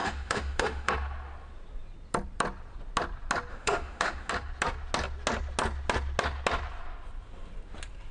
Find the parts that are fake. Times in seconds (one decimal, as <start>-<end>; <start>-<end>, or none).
0.0-0.9; 3.5-4.3